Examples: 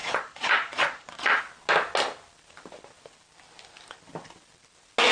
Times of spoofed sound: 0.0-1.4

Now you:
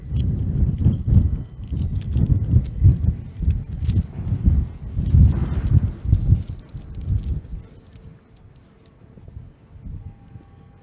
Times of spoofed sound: none

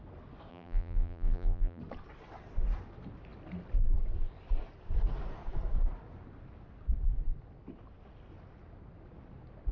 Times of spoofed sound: 0.5-1.8

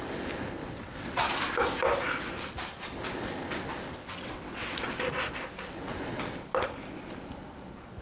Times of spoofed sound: 0.6-1.2; 3.9-4.8